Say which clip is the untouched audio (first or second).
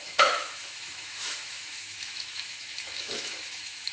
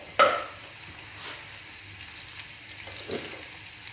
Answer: second